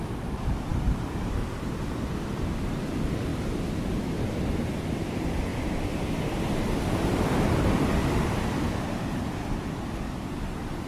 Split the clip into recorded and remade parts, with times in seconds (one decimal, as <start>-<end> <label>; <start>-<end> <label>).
0.0-10.9 recorded